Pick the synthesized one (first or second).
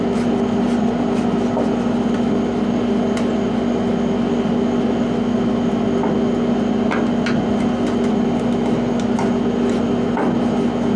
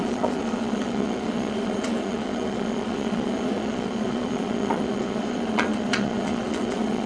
second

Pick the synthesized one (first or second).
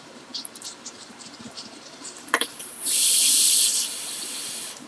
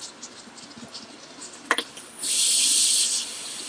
first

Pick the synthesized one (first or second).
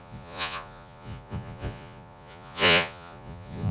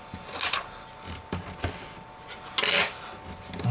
first